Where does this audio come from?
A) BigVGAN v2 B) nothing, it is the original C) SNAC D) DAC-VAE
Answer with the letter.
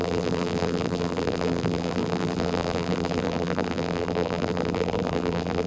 A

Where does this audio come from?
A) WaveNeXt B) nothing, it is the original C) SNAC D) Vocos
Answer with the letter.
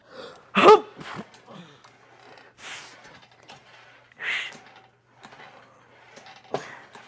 B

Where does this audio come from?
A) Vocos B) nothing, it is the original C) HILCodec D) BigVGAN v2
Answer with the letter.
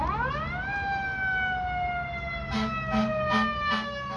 B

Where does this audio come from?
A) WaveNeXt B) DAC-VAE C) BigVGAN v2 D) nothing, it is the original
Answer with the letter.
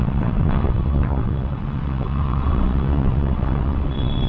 A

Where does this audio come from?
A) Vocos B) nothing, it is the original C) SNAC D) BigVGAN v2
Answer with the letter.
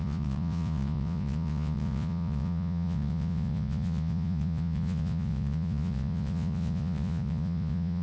A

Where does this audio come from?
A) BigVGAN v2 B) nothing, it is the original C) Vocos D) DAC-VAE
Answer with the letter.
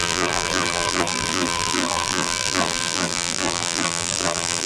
A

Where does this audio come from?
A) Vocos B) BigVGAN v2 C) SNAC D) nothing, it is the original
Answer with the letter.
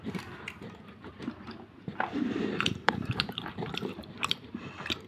B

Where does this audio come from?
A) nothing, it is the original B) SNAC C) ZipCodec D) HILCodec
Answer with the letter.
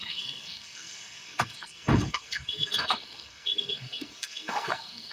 B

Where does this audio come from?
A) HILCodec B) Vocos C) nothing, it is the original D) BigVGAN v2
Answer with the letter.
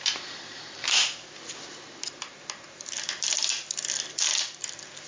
C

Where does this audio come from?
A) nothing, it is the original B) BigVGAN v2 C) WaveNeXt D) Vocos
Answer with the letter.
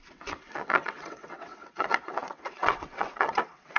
C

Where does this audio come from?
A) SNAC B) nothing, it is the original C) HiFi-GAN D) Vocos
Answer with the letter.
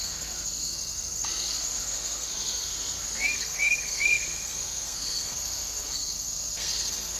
A